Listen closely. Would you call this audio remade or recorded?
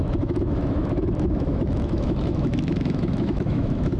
remade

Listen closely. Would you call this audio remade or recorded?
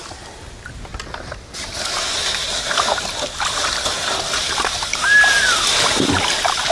recorded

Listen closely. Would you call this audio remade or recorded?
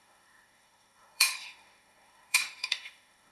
remade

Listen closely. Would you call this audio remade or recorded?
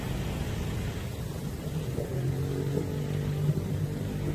recorded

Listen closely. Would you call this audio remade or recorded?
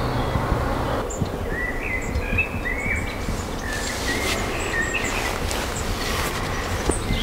recorded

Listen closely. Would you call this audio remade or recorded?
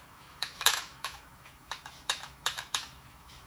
remade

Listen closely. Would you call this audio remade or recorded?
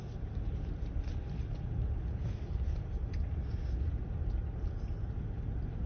recorded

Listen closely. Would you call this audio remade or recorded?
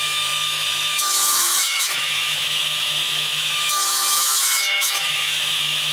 remade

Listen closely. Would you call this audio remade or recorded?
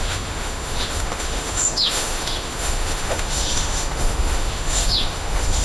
remade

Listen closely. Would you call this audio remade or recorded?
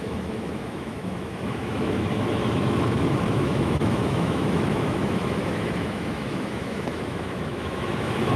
remade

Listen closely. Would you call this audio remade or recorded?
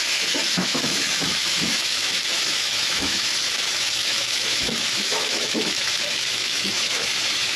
remade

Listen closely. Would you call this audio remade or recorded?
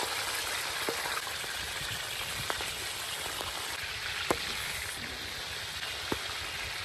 recorded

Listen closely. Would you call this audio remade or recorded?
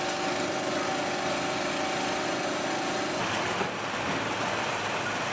recorded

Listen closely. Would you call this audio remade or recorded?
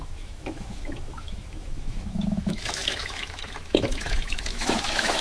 remade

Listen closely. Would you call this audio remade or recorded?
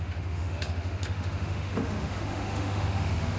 remade